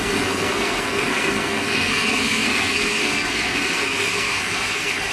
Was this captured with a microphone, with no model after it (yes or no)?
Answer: no